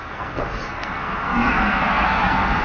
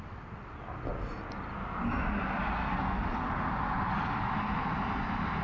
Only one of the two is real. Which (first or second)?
second